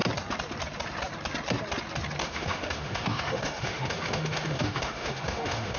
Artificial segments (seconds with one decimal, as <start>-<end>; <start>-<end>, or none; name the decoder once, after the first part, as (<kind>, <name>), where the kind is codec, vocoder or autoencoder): 2.2-5.8 (autoencoder, DAC-VAE)